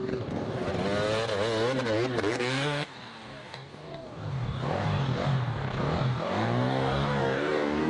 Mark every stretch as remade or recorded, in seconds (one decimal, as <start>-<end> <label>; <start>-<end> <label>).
0.0-0.7 remade; 0.7-2.3 recorded; 2.3-7.9 remade